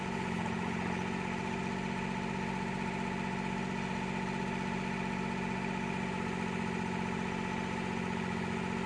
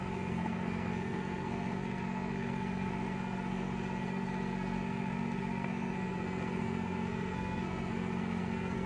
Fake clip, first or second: second